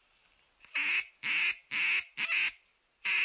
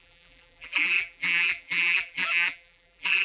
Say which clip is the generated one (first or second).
second